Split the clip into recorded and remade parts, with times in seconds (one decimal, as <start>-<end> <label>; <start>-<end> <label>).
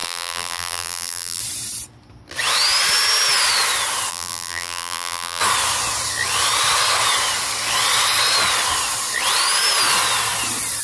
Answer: 0.0-1.4 remade; 1.4-4.1 recorded; 4.1-5.4 remade; 5.4-10.8 recorded